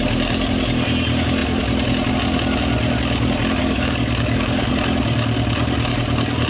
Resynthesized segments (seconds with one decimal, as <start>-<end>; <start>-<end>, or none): 3.6-4.7